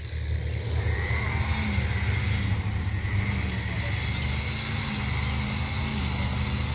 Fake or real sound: real